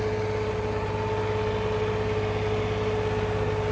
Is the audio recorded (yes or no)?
yes